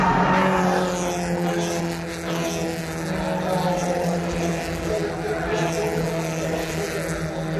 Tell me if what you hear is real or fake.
real